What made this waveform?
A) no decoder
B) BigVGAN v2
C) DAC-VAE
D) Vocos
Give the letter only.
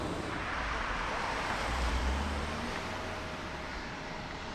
B